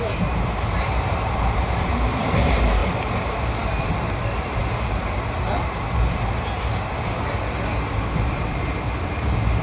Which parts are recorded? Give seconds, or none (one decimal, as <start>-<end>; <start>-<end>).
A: 2.8-3.8; 4.6-7.9